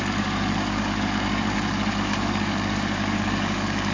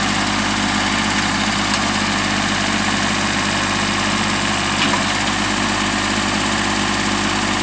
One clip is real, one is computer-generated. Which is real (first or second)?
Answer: second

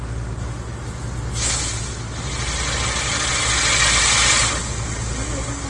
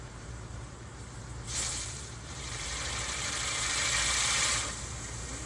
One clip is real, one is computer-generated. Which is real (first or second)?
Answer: first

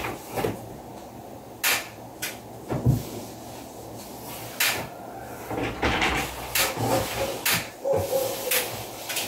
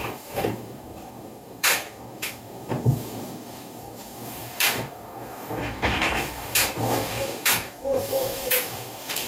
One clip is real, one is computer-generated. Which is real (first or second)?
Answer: first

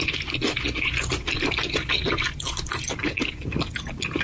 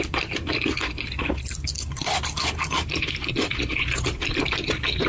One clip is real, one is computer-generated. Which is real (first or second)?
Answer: first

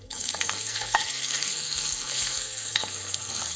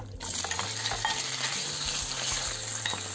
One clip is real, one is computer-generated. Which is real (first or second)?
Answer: second